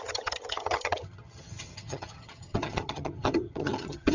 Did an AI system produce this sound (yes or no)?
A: yes